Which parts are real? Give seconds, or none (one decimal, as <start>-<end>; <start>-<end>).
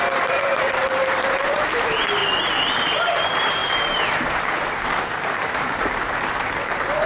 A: 2.2-2.9